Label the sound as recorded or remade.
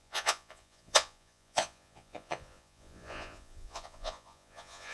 remade